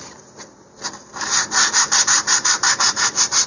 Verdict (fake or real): fake